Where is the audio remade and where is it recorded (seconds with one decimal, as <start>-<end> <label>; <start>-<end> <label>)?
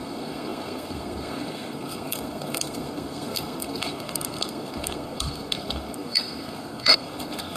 0.0-7.6 remade